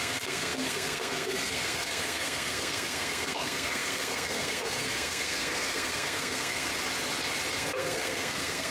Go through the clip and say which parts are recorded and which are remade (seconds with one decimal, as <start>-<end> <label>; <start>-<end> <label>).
0.0-6.7 remade; 6.7-7.5 recorded; 7.5-8.7 remade